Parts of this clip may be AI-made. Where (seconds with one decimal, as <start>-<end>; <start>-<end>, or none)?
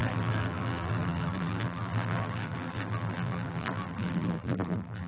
0.0-5.1